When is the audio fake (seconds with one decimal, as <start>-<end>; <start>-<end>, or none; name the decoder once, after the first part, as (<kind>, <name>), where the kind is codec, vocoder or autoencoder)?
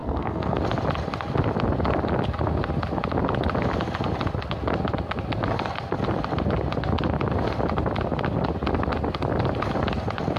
0.0-0.6 (codec, SNAC)